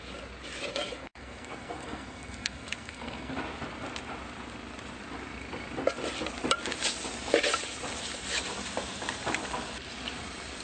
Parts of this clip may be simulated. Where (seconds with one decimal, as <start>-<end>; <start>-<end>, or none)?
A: 0.7-3.3